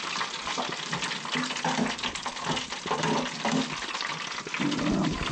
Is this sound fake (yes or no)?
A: no